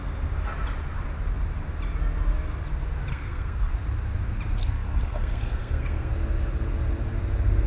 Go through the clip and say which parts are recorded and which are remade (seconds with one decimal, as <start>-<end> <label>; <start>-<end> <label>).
0.0-3.1 recorded; 3.1-3.7 remade; 3.7-4.6 recorded; 4.6-6.1 remade; 6.1-7.7 recorded